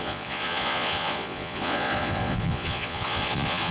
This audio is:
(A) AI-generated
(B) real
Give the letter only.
A